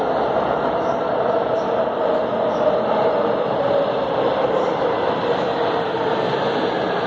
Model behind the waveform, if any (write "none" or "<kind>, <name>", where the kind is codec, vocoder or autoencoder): none